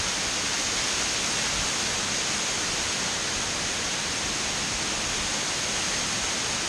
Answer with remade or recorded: recorded